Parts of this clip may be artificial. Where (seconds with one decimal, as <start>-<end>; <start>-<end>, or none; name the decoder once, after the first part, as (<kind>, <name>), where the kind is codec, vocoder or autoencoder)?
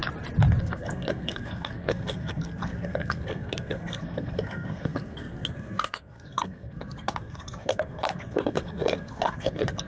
0.6-9.9 (codec, SNAC)